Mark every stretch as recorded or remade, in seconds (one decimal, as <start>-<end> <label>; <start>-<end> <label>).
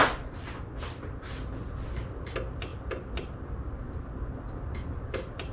0.0-5.5 recorded